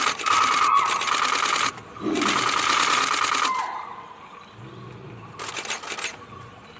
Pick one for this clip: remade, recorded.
recorded